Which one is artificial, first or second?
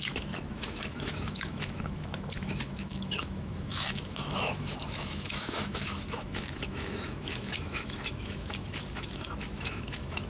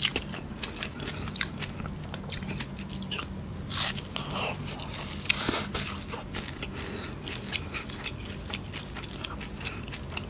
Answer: first